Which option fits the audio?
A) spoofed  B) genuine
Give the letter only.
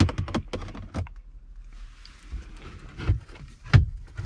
B